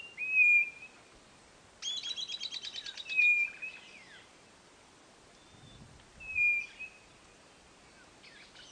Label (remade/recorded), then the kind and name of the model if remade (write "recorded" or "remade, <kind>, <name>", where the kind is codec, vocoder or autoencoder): recorded